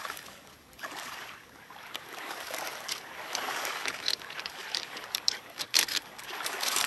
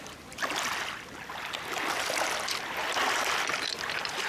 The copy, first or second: first